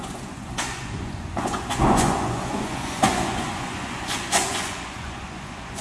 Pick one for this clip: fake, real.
fake